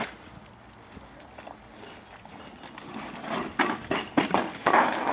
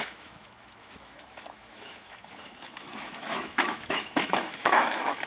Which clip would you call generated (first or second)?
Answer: second